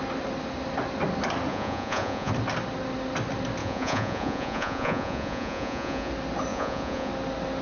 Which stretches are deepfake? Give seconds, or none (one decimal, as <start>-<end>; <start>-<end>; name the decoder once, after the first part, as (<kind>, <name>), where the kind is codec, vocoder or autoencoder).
1.5-2.3 (vocoder, Vocos); 3.6-6.1; 6.5-7.1